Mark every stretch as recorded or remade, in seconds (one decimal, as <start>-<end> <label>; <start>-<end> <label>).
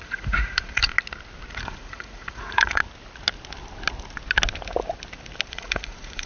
0.0-0.9 remade; 0.9-1.5 recorded; 1.5-2.8 remade; 2.8-5.5 recorded; 5.5-6.3 remade